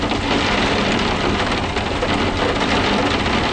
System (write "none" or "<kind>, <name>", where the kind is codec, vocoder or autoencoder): none